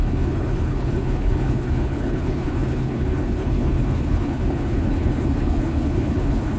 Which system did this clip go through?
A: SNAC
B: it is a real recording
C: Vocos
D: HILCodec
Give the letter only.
D